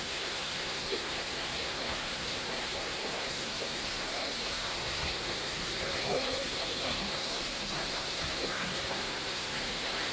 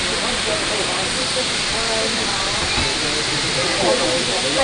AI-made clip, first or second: first